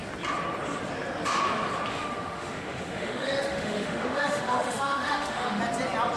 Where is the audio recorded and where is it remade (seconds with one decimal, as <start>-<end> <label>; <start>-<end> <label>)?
0.0-1.9 recorded; 1.9-5.6 remade; 5.6-6.2 recorded